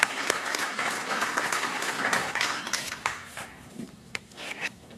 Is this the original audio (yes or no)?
no